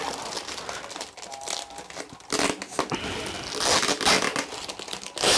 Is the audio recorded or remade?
recorded